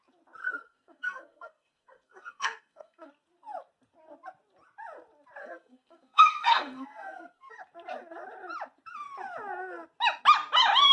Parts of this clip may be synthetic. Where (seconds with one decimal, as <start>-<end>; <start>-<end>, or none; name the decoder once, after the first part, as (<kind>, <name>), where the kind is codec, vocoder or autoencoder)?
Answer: 0.4-3.1 (codec, SNAC); 5.4-7.5